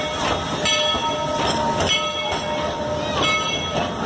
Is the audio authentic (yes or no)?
yes